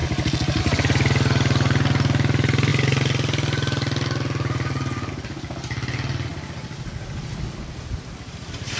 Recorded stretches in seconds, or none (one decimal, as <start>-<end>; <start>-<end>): 0.0-8.8